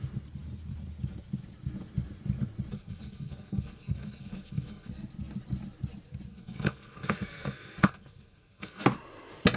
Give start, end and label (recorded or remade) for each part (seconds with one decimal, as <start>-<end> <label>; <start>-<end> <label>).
0.0-2.7 recorded; 2.7-4.9 remade; 4.9-6.3 recorded; 6.3-8.8 remade; 8.8-9.6 recorded